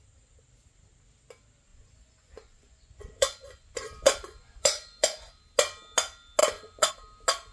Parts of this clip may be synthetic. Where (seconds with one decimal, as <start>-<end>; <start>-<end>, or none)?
1.7-5.4; 6.4-6.9

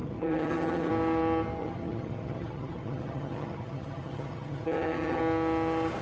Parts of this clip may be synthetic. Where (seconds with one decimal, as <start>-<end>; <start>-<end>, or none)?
0.0-0.9; 1.6-5.2

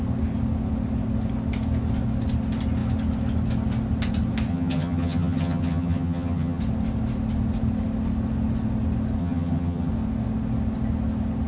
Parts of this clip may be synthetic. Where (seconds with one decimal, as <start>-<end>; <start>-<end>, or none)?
4.5-6.6; 9.2-9.9